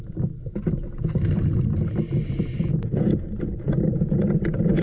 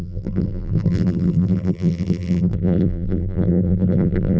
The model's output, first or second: second